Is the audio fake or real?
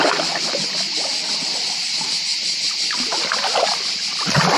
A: real